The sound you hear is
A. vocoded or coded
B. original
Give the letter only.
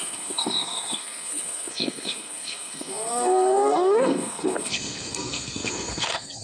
A